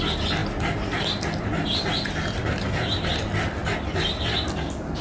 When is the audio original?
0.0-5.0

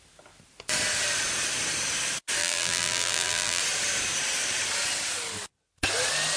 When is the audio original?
0.0-2.4; 3.6-6.4

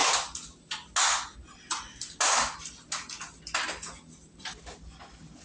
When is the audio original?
0.0-5.4

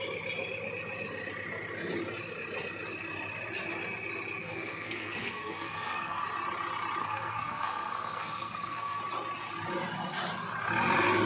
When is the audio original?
0.0-4.4; 6.2-7.0; 9.0-11.3

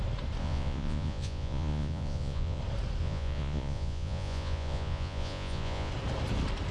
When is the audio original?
0.0-0.4; 2.6-3.0; 5.9-6.7

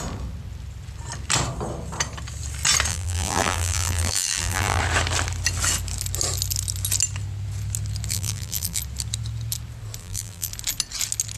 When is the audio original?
0.0-2.9; 4.8-8.1; 8.8-10.0; 10.5-11.4